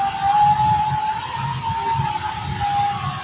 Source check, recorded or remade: recorded